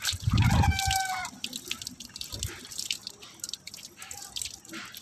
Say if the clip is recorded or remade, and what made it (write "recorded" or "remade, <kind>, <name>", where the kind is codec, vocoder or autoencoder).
recorded